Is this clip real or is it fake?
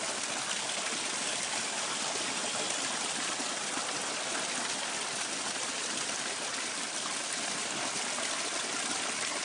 real